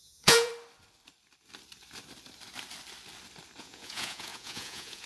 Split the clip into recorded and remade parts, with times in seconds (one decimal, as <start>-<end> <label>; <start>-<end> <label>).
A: 0.0-0.5 remade; 0.5-3.6 recorded; 3.6-5.1 remade